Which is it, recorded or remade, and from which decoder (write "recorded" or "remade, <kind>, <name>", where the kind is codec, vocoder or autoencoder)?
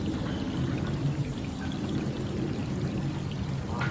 remade, vocoder, BigVGAN v2